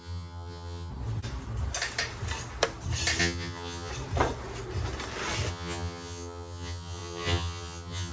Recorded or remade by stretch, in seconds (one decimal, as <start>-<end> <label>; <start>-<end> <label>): 0.0-0.9 remade; 0.9-3.2 recorded; 3.2-3.9 remade; 3.9-5.5 recorded; 5.5-8.1 remade